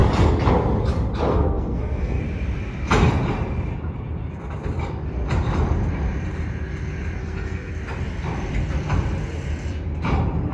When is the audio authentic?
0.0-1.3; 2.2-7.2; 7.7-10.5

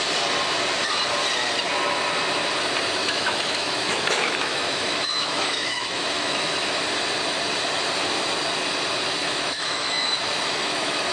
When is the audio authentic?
0.0-3.0; 6.8-9.2

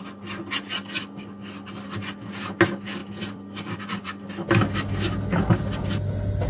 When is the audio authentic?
0.0-3.0; 4.3-6.5

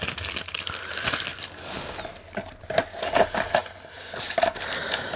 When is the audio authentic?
0.0-5.2

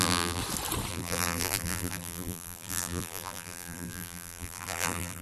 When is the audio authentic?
0.4-0.9